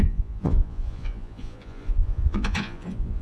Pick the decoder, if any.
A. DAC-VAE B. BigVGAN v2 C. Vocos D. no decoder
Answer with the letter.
C